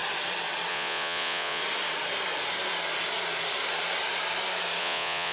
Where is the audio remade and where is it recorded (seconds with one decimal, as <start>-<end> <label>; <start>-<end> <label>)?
0.0-0.7 recorded; 0.7-1.6 remade; 1.6-4.8 recorded; 4.8-5.3 remade